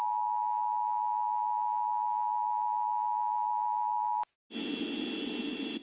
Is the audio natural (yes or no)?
yes